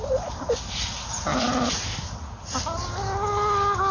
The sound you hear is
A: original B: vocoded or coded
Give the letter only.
A